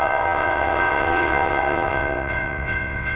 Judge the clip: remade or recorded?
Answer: remade